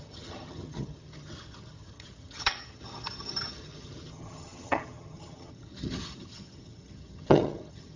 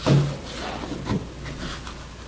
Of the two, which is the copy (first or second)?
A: first